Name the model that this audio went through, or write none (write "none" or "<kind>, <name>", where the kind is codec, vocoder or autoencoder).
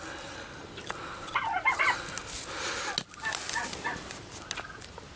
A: none